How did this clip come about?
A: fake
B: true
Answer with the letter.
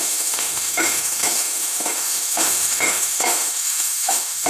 A